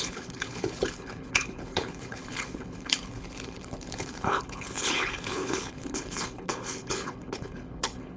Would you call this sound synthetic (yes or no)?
yes